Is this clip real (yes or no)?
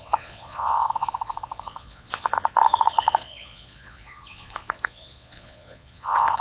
no